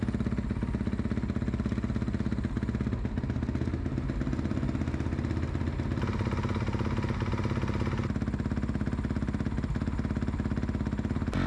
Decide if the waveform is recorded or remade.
recorded